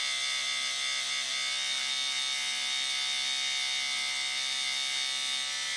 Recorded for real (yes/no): yes